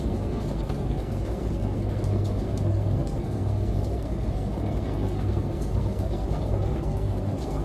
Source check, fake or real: fake